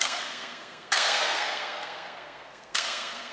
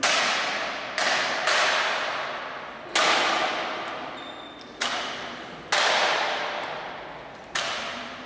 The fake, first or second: first